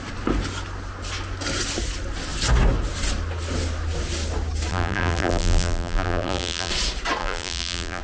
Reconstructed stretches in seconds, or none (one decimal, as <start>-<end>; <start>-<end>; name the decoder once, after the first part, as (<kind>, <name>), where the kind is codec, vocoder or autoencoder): 4.7-6.7 (vocoder, BigVGAN v2); 7.2-8.0